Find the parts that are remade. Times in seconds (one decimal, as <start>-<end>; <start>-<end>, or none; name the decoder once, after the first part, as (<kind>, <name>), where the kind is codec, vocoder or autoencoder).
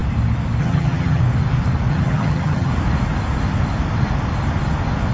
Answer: 0.6-1.2 (vocoder, HiFi-GAN); 1.9-2.7